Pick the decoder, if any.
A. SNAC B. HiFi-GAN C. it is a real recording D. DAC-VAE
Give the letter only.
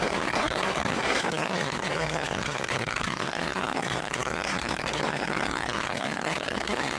A